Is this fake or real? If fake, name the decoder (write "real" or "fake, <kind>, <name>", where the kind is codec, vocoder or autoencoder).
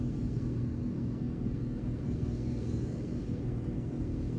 fake, codec, SNAC